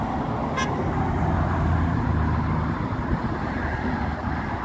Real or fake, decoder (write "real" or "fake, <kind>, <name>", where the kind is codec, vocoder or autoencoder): real